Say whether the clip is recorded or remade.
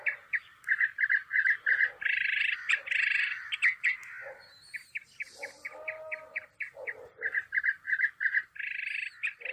remade